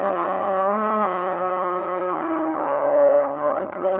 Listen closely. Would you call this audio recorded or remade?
remade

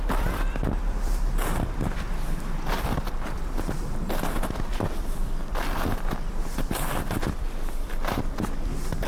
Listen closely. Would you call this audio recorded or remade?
remade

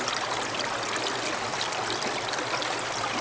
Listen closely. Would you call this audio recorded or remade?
recorded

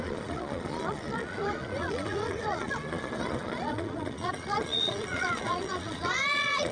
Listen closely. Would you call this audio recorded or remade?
remade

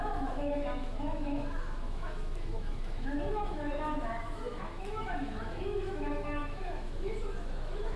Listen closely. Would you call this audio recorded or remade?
remade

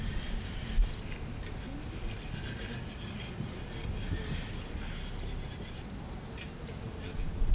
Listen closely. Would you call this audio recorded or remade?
recorded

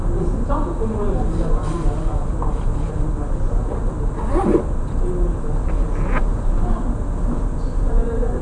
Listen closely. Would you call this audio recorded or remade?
recorded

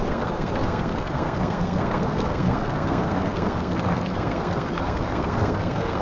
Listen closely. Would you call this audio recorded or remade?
remade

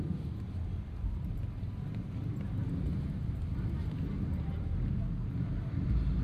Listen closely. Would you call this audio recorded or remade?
recorded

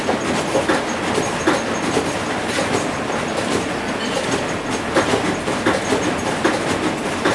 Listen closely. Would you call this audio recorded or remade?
remade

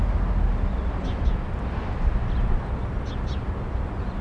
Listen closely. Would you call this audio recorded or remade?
recorded